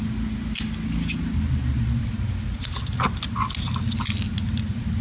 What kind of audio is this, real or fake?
real